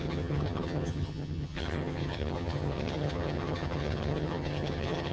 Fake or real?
fake